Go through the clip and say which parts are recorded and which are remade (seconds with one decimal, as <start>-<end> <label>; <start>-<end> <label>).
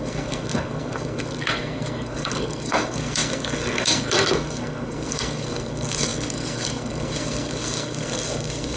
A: 0.0-8.8 remade